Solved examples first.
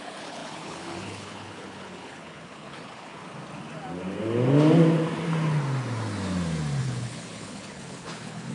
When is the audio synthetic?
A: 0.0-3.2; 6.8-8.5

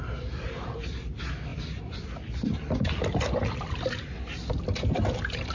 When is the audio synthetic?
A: none

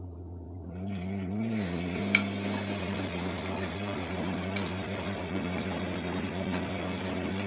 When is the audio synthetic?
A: 0.0-2.0; 2.8-7.5

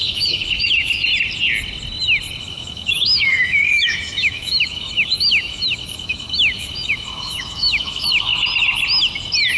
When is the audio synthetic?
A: 0.0-1.1; 2.4-8.3

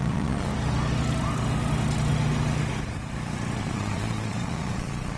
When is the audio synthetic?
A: 0.0-0.5; 3.6-5.2